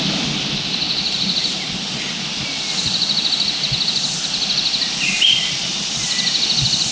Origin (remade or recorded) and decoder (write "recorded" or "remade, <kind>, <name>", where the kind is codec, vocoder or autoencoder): recorded